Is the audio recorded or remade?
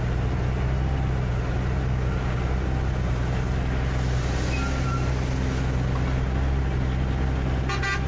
recorded